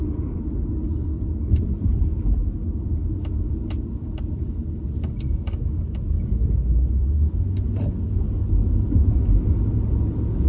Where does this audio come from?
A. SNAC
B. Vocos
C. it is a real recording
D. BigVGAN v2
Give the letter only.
C